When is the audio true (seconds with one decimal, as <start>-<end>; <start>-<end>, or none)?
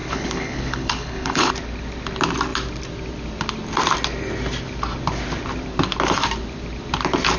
1.5-7.4